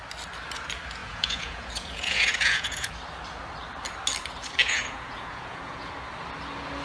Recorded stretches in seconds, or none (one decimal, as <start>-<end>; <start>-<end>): 0.0-1.0; 2.9-4.6; 5.9-6.8